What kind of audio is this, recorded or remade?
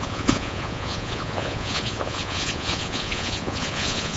remade